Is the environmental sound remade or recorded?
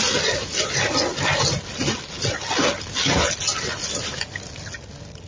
recorded